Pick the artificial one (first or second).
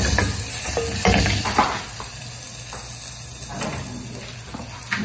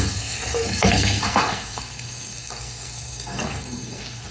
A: second